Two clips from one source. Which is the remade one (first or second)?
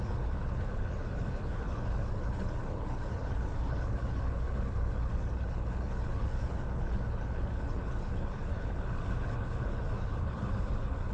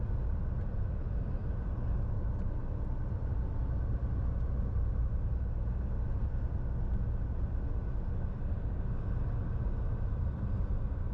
first